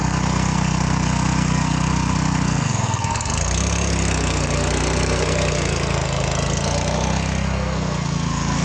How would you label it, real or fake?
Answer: fake